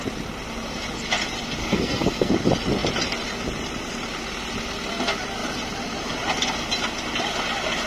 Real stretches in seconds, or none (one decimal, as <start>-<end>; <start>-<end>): 0.0-1.6; 2.3-7.9